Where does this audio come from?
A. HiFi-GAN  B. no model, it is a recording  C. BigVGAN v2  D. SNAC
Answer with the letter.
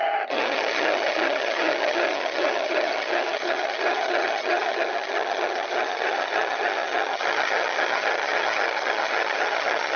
A